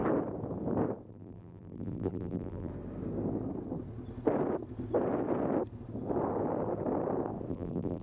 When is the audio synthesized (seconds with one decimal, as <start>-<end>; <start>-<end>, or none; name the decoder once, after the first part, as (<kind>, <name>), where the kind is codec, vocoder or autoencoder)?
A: 1.1-2.7 (vocoder, BigVGAN v2); 7.5-8.0